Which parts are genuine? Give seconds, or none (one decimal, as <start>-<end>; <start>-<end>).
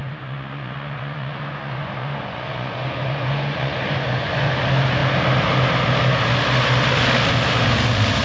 4.6-8.2